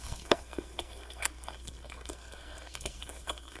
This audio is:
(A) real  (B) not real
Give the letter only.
B